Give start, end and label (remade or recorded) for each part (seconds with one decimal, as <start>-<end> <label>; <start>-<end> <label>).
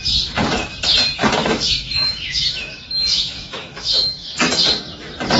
0.0-1.4 recorded; 1.4-4.6 remade; 4.6-5.4 recorded